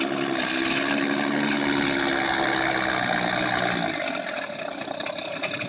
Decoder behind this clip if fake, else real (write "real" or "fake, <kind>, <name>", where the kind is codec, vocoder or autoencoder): real